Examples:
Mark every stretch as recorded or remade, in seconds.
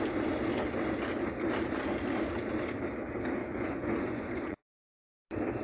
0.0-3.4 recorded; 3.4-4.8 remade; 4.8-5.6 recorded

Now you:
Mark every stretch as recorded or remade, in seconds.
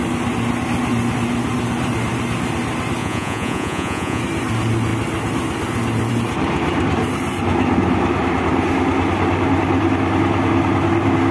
0.0-3.0 recorded; 3.0-4.2 remade; 4.2-11.3 recorded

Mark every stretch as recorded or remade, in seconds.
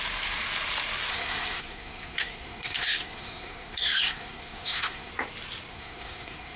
0.0-1.1 recorded; 1.1-5.1 remade; 5.1-5.7 recorded; 5.7-6.6 remade